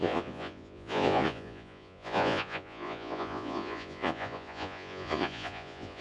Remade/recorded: remade